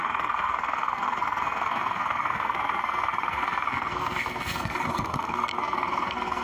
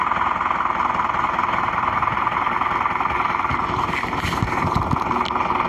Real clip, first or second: second